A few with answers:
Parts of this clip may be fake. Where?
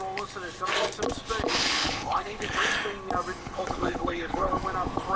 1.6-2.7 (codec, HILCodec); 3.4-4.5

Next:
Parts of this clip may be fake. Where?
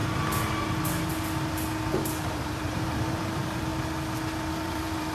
2.3-3.7 (vocoder, BigVGAN v2); 4.5-5.1